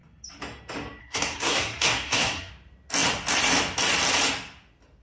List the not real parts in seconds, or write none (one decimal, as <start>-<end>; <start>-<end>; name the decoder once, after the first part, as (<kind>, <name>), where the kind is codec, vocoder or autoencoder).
1.0-2.5 (codec, SNAC)